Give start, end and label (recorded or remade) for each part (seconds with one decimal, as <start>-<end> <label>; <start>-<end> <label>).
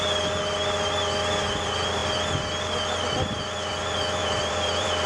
0.0-4.2 recorded; 4.2-5.1 remade